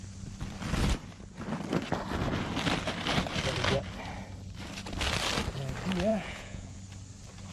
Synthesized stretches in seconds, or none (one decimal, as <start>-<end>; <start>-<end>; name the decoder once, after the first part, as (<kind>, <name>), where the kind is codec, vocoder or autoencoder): 6.1-6.8 (vocoder, Vocos)